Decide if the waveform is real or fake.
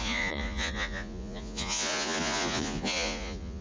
fake